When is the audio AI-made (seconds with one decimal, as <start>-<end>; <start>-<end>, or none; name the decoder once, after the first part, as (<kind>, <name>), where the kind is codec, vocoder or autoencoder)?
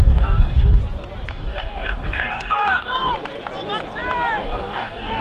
0.0-0.8 (codec, DAC); 1.3-3.1; 4.4-5.2